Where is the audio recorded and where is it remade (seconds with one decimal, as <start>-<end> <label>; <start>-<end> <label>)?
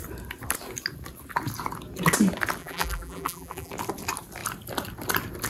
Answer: 0.0-2.6 recorded; 2.6-3.7 remade; 3.7-5.5 recorded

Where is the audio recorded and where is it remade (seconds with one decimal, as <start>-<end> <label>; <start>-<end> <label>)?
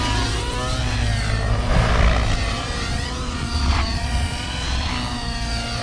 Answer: 0.0-2.9 recorded; 2.9-4.9 remade; 4.9-5.8 recorded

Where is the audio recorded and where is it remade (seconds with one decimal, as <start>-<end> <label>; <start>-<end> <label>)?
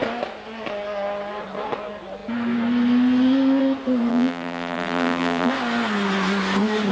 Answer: 0.0-4.1 recorded; 4.1-5.5 remade; 5.5-6.9 recorded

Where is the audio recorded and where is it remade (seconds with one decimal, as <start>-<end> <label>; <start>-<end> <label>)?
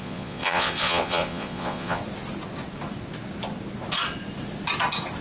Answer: 0.0-2.0 remade; 2.0-5.2 recorded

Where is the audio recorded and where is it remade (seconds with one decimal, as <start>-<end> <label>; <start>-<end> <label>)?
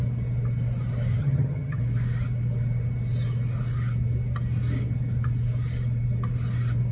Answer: 0.0-1.2 recorded; 1.2-1.8 remade; 1.8-6.9 recorded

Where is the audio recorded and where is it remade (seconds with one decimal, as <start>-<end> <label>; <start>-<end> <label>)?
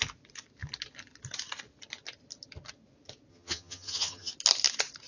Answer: 0.0-3.3 recorded; 3.3-4.3 remade; 4.3-5.1 recorded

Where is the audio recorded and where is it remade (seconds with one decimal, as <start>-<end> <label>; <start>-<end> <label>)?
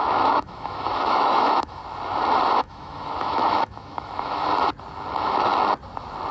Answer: 0.0-1.8 remade; 1.8-2.6 recorded; 2.6-4.4 remade; 4.4-5.1 recorded; 5.1-5.5 remade; 5.5-6.3 recorded